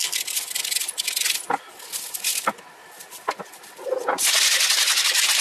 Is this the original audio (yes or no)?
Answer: yes